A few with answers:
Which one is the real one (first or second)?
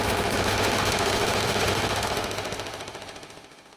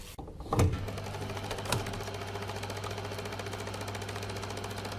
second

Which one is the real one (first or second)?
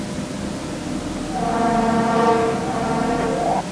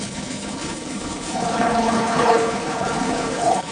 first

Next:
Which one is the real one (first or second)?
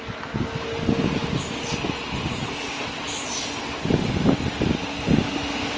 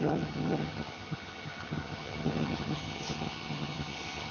first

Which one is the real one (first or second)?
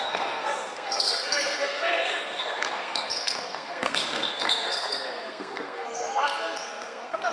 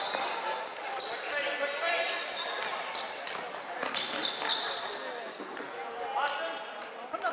second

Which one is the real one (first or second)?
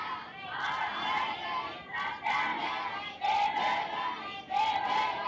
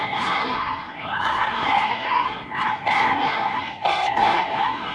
first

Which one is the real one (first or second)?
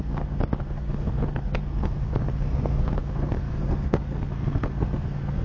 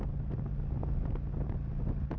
second